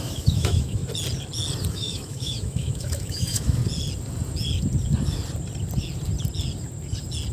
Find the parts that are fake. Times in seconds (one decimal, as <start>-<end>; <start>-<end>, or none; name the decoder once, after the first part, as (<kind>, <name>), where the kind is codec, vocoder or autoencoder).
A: 0.0-0.8 (autoencoder, DAC-VAE); 1.7-3.6